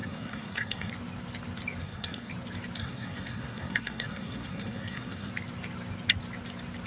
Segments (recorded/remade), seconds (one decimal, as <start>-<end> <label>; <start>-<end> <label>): 0.0-0.9 remade; 0.9-1.8 recorded; 1.8-2.3 remade; 2.3-2.8 recorded; 2.8-5.3 remade; 5.3-6.9 recorded